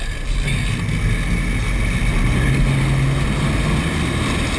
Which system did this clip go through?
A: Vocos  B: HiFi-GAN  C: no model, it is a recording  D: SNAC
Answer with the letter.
C